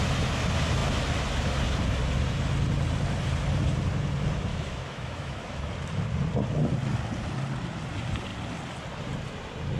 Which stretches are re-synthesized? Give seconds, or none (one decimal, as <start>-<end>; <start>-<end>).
4.5-5.6